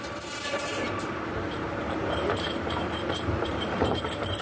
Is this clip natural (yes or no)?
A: no